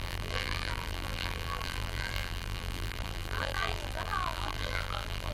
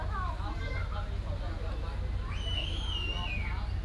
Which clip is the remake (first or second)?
first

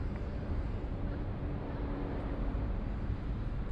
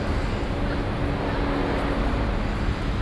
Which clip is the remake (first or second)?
first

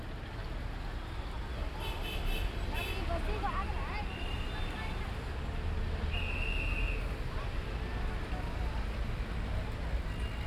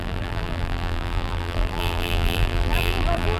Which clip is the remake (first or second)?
second